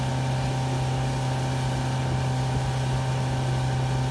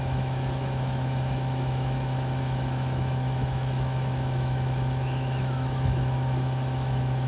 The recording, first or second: first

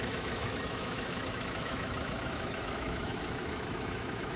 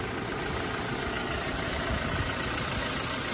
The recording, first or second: second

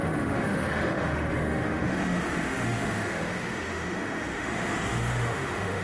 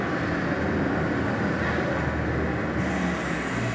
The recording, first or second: second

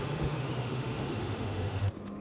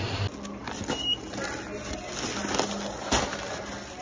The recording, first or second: second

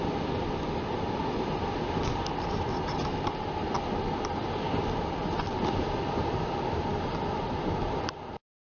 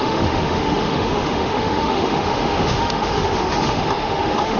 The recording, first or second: first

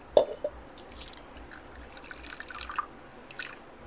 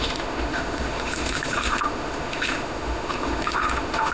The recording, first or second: first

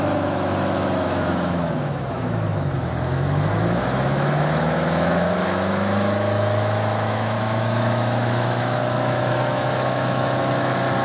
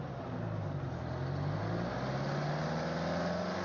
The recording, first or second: second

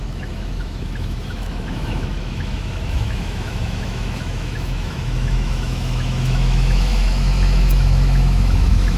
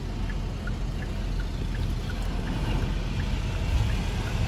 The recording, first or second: second